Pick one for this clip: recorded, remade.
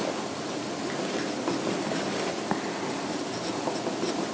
remade